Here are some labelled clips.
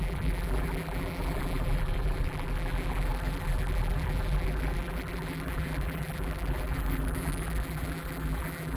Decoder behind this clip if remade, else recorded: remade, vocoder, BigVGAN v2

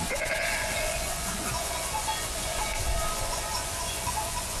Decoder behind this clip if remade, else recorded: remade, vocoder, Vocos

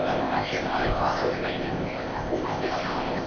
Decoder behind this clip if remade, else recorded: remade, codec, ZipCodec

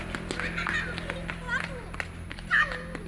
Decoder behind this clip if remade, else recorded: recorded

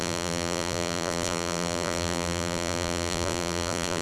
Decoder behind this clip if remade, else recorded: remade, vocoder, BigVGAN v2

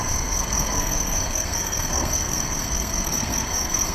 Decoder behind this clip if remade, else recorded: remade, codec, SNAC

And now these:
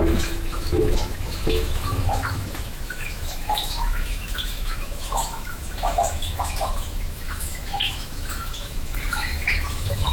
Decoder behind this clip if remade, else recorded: remade, autoencoder, DAC-VAE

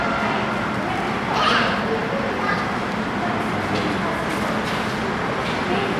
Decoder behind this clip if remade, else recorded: recorded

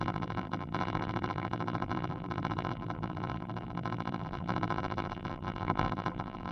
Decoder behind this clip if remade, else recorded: remade, vocoder, BigVGAN v2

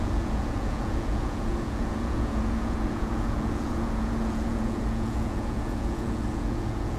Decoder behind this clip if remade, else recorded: remade, vocoder, Vocos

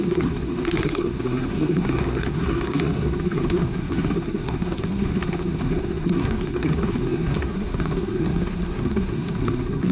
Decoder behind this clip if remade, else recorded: remade, codec, SNAC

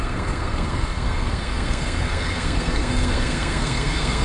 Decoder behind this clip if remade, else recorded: remade, codec, SNAC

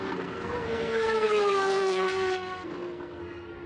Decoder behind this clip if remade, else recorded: remade, codec, SNAC